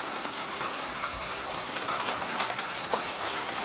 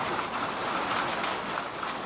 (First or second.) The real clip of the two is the second